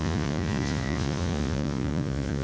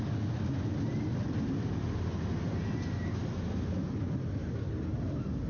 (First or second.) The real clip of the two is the second